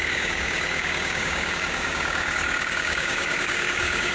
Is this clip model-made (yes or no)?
yes